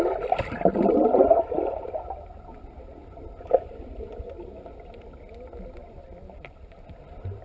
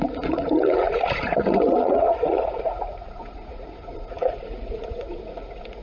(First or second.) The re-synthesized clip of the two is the second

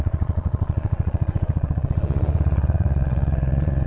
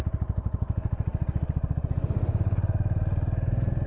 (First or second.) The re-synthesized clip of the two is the first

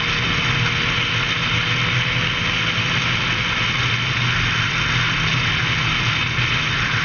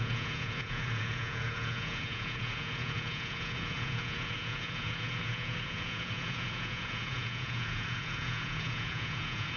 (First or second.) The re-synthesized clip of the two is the second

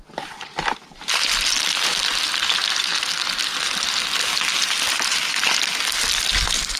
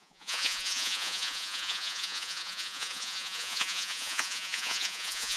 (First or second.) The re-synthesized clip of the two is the second